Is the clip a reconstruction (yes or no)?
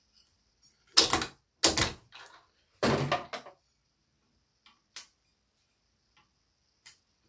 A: no